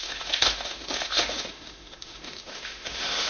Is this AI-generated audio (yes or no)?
yes